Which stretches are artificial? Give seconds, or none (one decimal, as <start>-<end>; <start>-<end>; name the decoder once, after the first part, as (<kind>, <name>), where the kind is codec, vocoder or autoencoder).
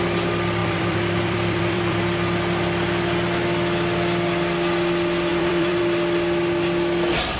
0.6-2.0 (vocoder, BigVGAN v2); 5.3-5.8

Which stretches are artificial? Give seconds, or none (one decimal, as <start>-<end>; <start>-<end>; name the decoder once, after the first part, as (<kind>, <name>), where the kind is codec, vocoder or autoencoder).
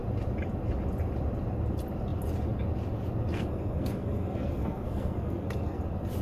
3.3-5.8 (codec, SNAC)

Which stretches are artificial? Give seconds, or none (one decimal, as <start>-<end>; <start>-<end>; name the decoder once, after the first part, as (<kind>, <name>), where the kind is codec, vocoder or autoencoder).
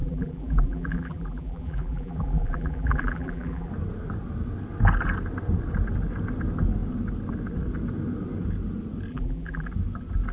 0.0-3.7 (vocoder, BigVGAN v2); 9.1-9.7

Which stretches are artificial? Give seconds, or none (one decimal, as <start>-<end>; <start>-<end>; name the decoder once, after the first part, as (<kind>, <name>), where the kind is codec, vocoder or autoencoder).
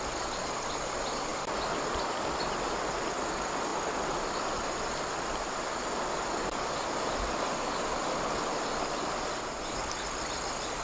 none